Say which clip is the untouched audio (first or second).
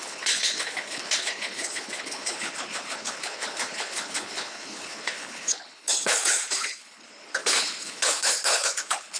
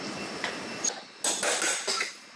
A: second